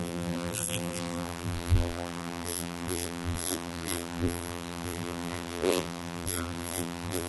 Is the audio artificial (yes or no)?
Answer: yes